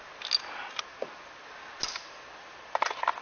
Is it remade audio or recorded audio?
recorded